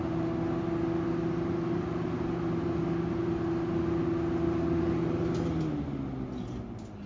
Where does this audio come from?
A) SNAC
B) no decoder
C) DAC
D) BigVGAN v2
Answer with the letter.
B